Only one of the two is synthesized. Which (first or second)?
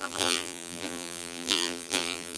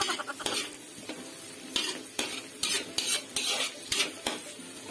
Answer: first